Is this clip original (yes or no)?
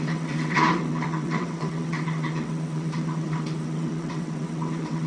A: no